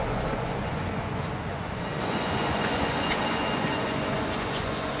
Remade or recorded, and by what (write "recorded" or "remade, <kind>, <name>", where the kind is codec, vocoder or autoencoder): remade, vocoder, Vocos